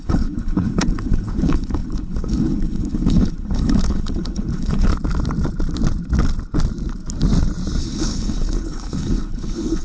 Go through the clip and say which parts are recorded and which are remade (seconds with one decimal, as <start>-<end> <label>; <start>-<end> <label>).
0.0-4.9 remade; 4.9-7.8 recorded; 7.8-9.8 remade